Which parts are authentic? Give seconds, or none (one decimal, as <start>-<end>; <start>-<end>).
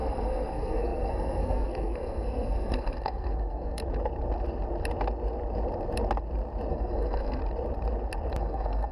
3.8-6.7; 7.4-8.4